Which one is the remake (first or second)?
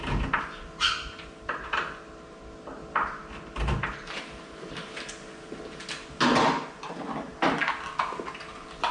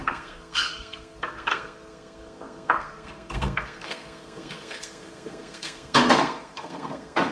second